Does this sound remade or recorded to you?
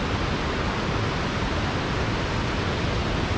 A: recorded